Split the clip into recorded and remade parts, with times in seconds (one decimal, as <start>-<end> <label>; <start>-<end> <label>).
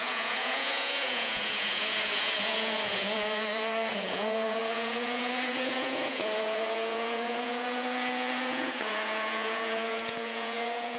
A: 0.0-11.0 remade